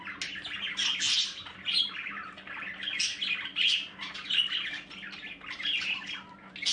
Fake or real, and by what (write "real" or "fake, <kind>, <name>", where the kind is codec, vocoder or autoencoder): real